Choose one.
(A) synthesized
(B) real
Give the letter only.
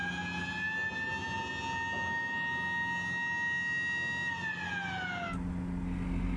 B